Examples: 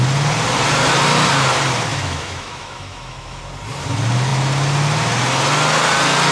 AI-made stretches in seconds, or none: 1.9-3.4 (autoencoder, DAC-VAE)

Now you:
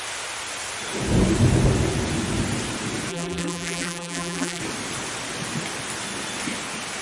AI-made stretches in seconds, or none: 3.1-4.6 (vocoder, BigVGAN v2)